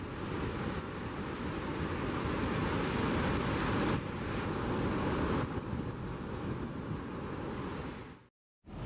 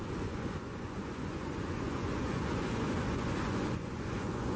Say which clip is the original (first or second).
first